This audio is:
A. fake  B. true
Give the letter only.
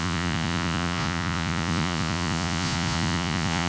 A